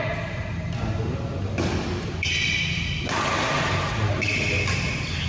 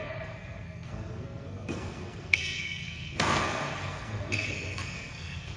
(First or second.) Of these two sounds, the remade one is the second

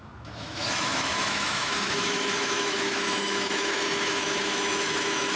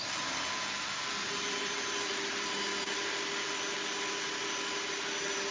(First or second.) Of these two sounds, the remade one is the first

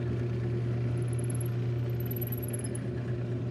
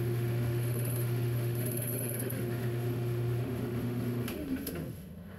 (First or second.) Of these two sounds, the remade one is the second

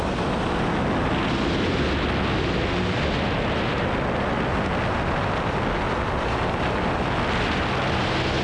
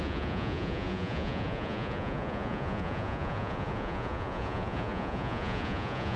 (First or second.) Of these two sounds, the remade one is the second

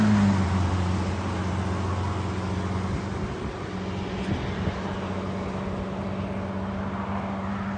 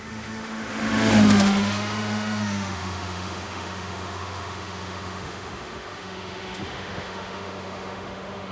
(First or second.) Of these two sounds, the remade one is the second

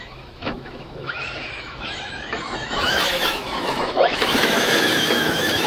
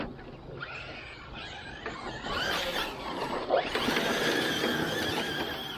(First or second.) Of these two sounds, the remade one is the first